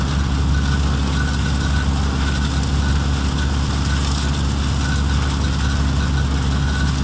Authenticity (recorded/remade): recorded